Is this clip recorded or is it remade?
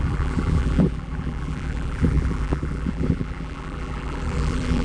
remade